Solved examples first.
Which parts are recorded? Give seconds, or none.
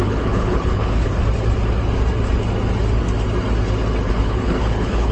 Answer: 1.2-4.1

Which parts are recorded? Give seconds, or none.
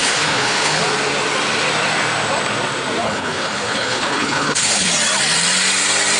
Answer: 0.8-3.0; 4.9-6.2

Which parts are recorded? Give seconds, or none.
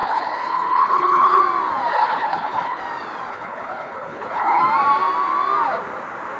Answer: 1.4-1.9; 2.8-3.3; 4.6-6.4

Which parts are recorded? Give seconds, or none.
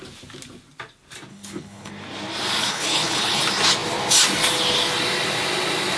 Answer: 0.0-1.3; 1.9-2.6; 3.4-6.0